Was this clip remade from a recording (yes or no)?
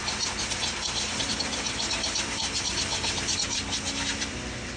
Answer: no